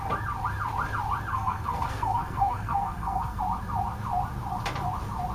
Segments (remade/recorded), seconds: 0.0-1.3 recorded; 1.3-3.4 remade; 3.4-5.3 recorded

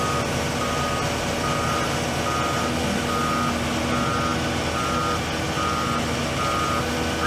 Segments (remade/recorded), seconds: 0.0-7.3 recorded